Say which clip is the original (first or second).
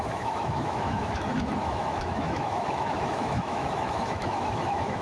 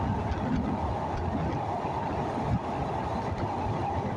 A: second